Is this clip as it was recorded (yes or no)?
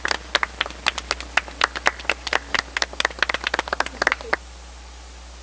yes